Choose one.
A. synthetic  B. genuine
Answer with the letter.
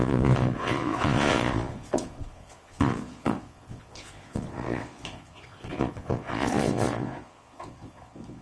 A